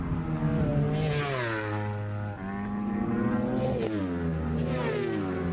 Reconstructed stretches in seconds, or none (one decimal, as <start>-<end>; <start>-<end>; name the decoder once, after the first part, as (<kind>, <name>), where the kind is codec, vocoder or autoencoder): none